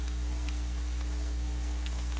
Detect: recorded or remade remade